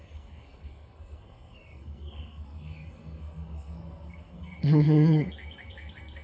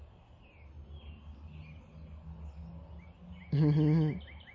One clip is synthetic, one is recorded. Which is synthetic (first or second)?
first